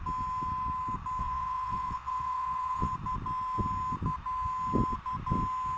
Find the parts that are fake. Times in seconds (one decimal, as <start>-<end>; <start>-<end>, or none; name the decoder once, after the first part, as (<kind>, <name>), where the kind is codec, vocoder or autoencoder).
1.2-2.9 (vocoder, Vocos)